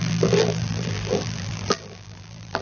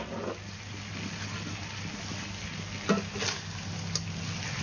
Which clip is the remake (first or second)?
first